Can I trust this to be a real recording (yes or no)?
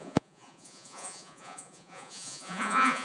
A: no